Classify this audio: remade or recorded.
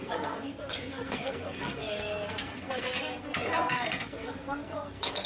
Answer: remade